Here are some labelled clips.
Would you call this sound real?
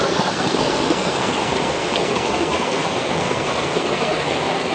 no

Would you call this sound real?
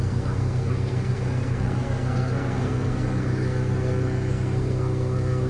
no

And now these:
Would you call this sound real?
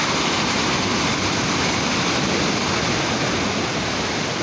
yes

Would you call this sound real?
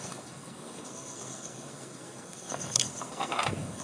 no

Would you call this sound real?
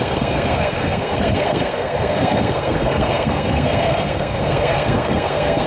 no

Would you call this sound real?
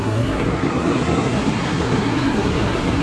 no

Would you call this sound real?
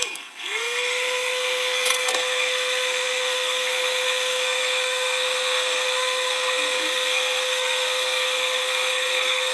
no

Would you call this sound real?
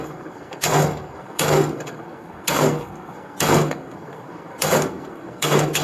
no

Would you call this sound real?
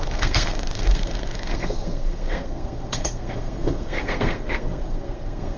no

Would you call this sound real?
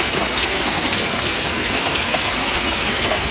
no